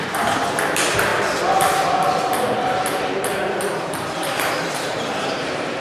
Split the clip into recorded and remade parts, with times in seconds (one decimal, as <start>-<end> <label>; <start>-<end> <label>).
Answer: 0.0-1.1 remade; 1.1-3.0 recorded; 3.0-5.8 remade